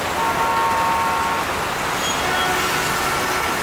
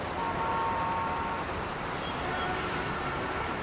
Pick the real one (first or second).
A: first